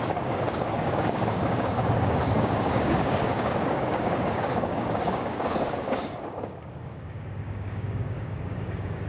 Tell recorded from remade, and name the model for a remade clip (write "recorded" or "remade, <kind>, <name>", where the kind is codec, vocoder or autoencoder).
remade, codec, DAC